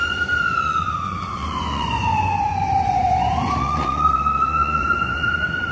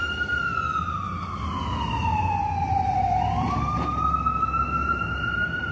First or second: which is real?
second